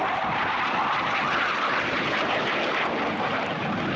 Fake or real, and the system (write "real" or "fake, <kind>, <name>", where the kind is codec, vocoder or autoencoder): real